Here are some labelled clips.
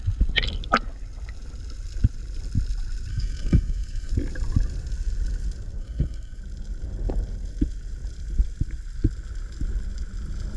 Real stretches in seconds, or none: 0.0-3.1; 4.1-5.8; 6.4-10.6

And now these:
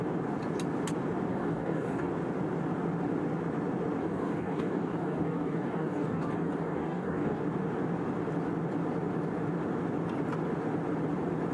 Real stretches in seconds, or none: 0.0-1.3; 2.1-4.0; 7.4-11.5

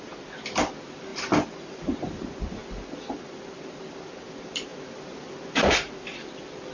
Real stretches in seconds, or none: 0.0-6.7

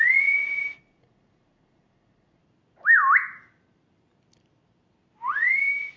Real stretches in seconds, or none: 2.4-5.3

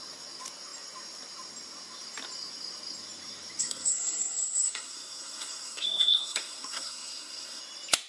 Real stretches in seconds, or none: 0.0-3.6; 7.6-8.1

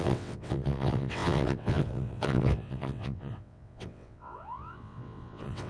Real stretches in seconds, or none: none

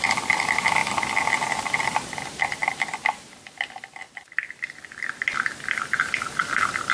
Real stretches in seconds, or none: 0.8-1.8